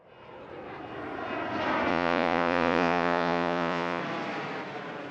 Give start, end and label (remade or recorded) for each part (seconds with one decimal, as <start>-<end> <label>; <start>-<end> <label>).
0.0-1.9 recorded; 1.9-4.0 remade; 4.0-5.1 recorded

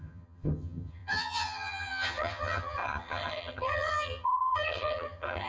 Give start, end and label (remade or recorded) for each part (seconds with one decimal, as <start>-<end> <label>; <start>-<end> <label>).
0.0-5.5 remade